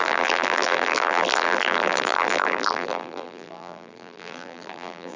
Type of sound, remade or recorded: remade